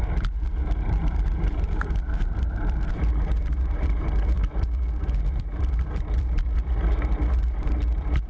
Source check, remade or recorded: remade